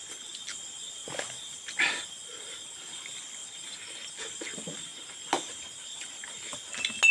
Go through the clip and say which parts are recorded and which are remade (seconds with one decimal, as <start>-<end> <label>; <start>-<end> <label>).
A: 0.0-7.1 recorded